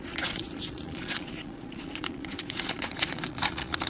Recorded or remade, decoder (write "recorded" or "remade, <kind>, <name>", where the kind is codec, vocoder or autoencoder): remade, vocoder, Vocos